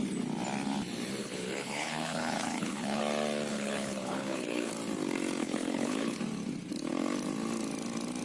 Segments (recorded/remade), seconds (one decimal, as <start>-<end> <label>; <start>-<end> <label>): 0.0-1.2 recorded; 1.2-3.0 remade; 3.0-3.5 recorded; 3.5-4.7 remade; 4.7-5.4 recorded; 5.4-6.2 remade; 6.2-8.2 recorded